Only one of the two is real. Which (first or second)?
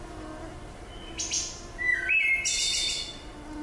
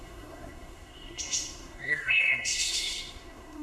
first